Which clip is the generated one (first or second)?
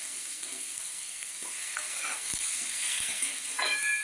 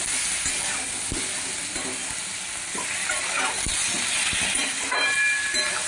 first